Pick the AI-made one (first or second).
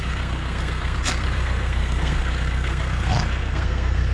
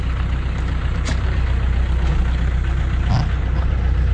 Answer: first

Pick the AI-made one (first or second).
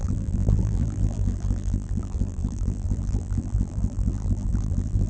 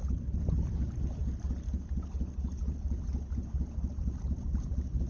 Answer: first